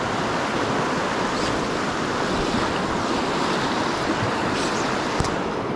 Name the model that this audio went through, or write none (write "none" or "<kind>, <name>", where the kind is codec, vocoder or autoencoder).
none